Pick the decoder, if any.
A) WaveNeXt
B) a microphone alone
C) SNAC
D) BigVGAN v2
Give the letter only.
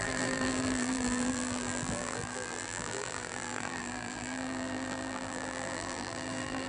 D